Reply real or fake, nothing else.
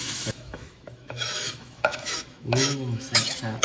fake